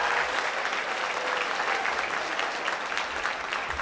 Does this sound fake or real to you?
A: real